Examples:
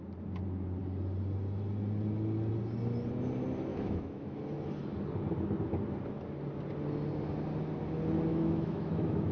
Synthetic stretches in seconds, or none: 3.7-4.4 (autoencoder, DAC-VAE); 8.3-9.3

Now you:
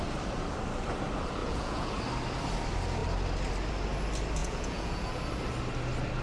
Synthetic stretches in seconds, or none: 1.4-2.0 (vocoder, Vocos); 4.4-5.2

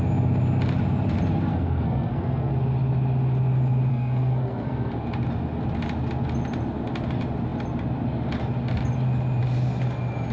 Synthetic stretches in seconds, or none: 1.5-2.5 (codec, SNAC); 3.9-4.9

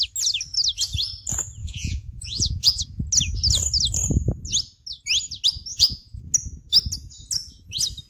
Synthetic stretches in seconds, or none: 1.6-2.8 (vocoder, Vocos); 5.7-6.2

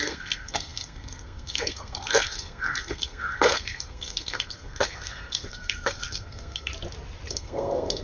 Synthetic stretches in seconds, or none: 0.0-6.7 (codec, SNAC); 7.3-8.0

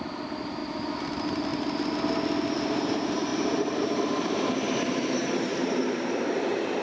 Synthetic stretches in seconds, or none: 3.3-6.8 (vocoder, BigVGAN v2)

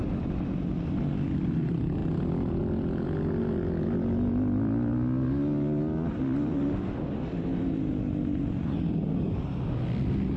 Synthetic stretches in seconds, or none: none